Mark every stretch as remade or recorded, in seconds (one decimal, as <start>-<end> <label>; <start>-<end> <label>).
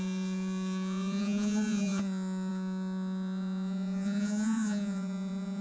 0.0-5.6 remade